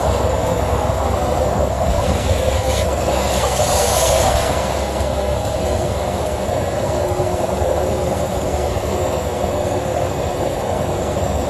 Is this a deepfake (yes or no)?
yes